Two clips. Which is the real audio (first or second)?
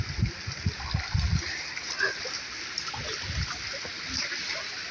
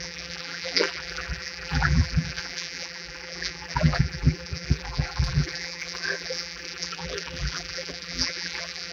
first